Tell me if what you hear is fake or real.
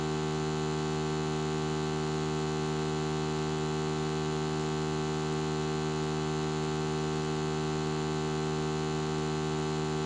fake